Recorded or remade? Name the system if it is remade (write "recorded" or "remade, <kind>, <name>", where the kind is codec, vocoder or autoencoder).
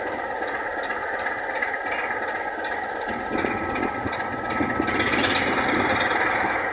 recorded